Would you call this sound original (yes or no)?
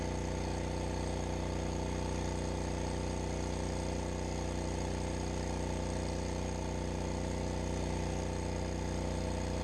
yes